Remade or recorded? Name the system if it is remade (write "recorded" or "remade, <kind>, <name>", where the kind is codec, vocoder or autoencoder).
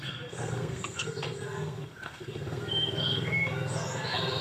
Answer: remade, codec, SNAC